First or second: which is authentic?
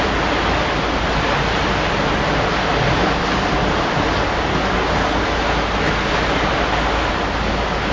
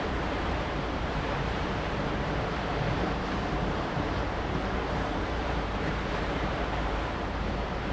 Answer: first